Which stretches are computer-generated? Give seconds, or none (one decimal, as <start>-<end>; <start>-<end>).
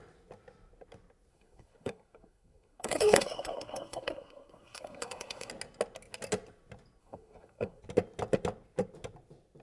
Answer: 1.3-5.5; 7.0-7.8